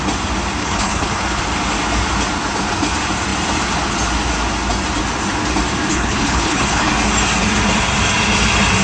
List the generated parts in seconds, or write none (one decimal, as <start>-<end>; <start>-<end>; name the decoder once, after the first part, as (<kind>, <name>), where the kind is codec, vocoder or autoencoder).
0.6-1.4 (codec, HILCodec); 5.9-6.9